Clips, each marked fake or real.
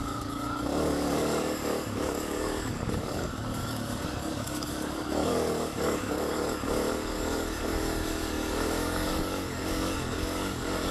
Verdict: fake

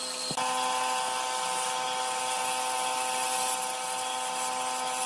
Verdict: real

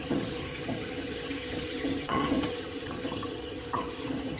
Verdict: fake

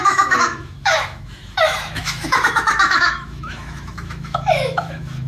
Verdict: fake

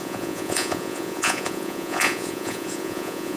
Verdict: fake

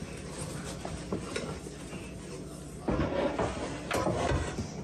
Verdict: real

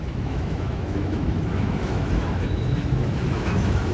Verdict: fake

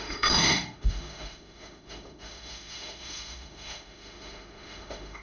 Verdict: fake